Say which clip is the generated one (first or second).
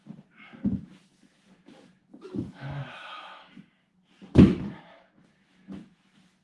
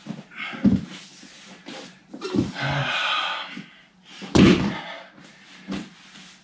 first